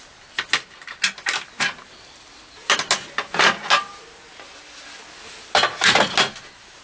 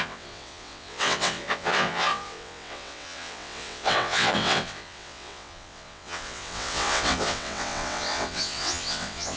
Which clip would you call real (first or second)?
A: first